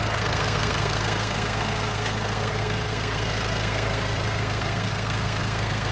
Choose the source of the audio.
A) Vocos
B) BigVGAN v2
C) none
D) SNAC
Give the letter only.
D